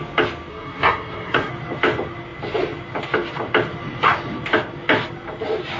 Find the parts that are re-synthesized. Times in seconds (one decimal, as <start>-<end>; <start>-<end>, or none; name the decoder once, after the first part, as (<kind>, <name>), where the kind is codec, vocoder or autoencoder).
0.5-1.5 (codec, SNAC)

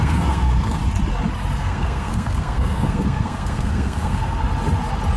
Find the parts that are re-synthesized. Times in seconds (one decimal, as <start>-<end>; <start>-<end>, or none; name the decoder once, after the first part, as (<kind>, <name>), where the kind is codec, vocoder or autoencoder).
0.0-0.8 (codec, SNAC); 1.6-4.4

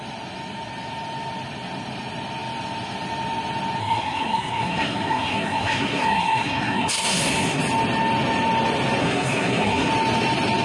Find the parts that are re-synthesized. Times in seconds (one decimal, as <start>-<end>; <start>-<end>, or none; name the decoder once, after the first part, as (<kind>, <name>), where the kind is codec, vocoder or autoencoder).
3.8-7.6 (codec, SNAC); 9.0-9.9

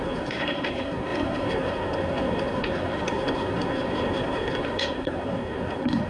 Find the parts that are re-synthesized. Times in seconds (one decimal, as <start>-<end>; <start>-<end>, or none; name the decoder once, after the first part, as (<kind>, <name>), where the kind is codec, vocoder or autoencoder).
0.0-6.1 (codec, SNAC)

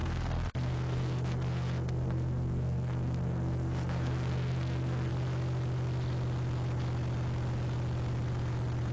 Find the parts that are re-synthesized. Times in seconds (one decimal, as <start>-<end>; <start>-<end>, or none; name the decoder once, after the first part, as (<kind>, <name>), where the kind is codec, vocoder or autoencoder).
0.0-5.1 (codec, SNAC)

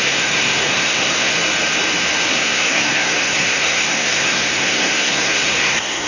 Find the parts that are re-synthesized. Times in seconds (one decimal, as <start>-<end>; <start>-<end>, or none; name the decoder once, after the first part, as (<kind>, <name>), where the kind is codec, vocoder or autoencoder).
0.0-1.3 (codec, SNAC); 2.3-6.1